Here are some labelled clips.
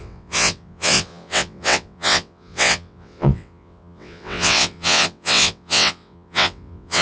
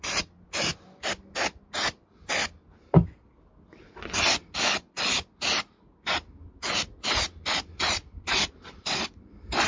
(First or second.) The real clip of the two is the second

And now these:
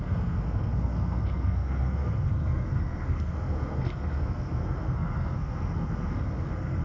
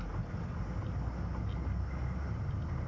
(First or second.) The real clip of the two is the second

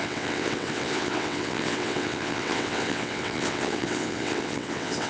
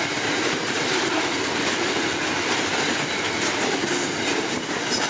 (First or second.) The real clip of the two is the second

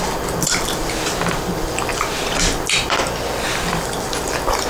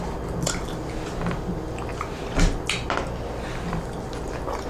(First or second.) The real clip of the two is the second